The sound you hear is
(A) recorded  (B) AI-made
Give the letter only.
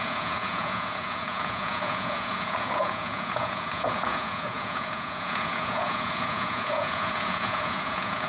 B